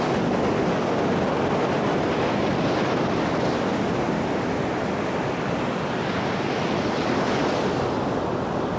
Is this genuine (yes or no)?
yes